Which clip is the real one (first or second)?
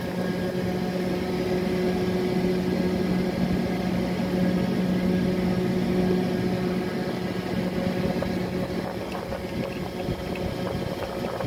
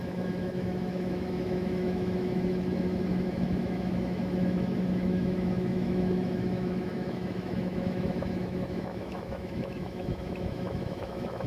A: first